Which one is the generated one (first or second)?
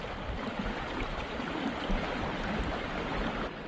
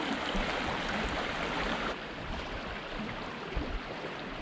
first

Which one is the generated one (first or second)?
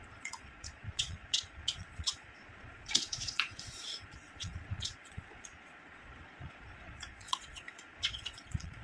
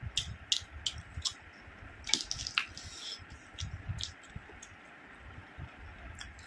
first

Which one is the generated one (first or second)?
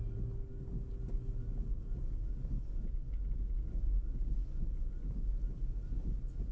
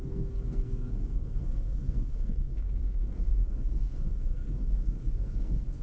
second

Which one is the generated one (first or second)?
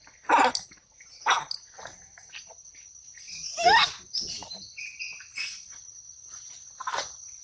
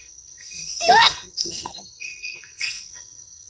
second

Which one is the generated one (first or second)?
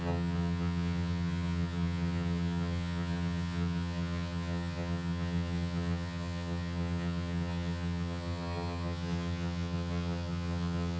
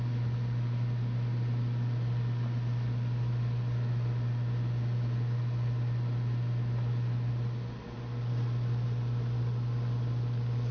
first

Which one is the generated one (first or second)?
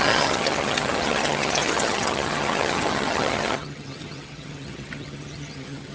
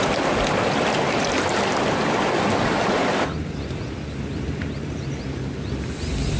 first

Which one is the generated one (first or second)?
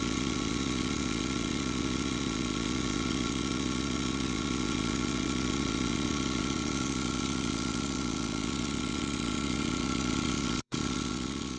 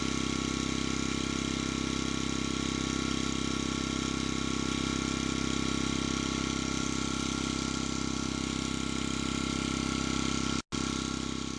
first